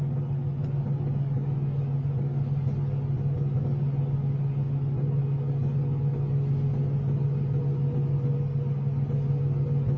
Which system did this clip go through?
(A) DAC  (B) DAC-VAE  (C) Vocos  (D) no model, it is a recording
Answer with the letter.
D